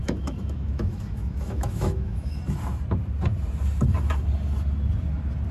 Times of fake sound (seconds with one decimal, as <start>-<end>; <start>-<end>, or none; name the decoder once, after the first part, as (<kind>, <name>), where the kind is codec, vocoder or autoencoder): 0.0-2.4 (autoencoder, DAC-VAE)

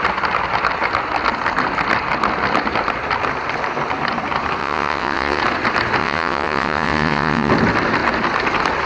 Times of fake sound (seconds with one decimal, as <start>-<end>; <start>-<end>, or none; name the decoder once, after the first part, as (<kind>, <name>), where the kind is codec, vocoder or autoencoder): 4.6-5.4 (vocoder, WaveNeXt); 6.0-7.5

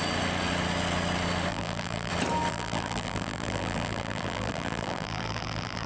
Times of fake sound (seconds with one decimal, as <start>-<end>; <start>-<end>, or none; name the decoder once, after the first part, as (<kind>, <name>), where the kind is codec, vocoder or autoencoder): 1.5-2.1 (vocoder, BigVGAN v2); 2.5-5.9

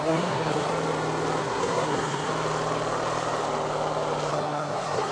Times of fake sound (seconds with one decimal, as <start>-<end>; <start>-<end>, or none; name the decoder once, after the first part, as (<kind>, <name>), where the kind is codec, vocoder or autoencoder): 0.0-0.7 (codec, SNAC); 1.4-2.3; 4.3-5.1

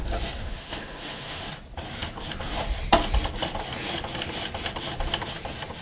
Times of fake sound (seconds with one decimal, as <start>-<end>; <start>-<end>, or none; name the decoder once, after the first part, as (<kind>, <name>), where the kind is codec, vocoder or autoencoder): 0.4-1.5 (autoencoder, DAC-VAE)

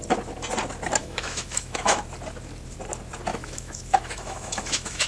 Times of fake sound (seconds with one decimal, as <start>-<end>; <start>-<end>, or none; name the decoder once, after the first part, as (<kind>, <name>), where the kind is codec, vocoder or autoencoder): 1.0-2.0 (autoencoder, DAC-VAE); 3.3-5.1

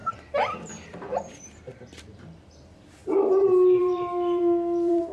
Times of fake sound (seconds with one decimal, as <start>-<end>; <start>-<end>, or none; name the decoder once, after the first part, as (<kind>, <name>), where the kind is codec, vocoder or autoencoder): 0.0-5.1 (vocoder, BigVGAN v2)